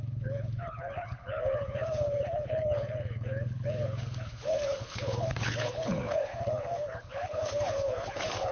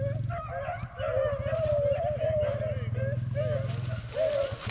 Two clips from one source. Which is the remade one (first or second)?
first